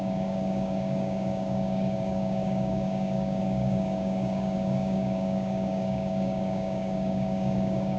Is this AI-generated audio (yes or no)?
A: yes